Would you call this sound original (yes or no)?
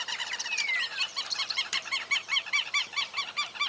no